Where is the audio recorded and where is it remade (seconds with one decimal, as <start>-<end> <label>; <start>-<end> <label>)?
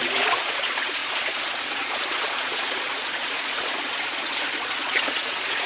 0.0-5.7 remade